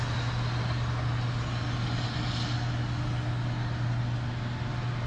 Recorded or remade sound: recorded